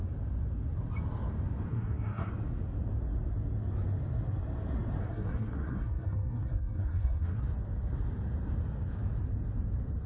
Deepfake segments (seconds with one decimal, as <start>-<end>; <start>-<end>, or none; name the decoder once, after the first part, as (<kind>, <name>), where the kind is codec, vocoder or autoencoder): 1.7-2.3 (codec, SNAC); 5.0-7.4